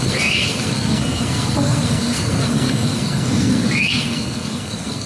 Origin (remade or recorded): remade